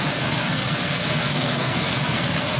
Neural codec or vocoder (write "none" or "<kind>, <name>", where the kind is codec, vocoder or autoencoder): codec, SNAC